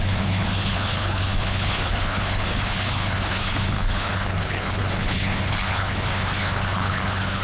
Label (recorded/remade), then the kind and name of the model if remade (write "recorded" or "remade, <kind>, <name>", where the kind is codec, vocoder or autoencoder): remade, codec, HILCodec